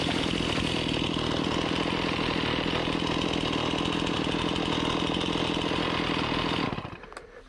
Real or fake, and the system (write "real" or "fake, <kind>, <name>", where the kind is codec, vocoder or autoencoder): real